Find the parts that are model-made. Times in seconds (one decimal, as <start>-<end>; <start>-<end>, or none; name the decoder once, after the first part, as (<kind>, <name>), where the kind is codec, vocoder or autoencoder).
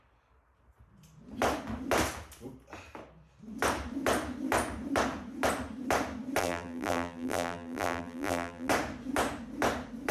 6.4-8.7 (vocoder, BigVGAN v2)